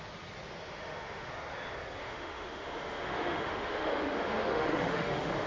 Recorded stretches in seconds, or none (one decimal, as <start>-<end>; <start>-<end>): 0.0-0.5; 1.3-2.0